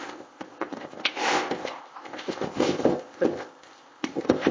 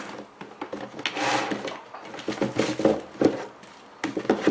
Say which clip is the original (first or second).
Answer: second